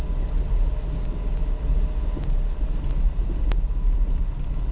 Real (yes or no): yes